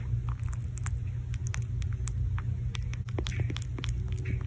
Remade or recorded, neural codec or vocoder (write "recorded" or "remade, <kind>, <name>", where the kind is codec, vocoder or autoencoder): recorded